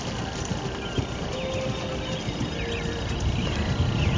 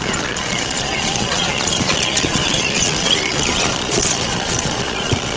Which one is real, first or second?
first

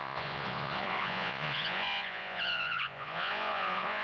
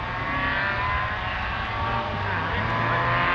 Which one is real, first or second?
second